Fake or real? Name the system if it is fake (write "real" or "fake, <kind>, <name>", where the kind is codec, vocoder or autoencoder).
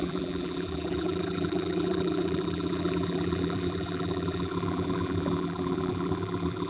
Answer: fake, vocoder, BigVGAN v2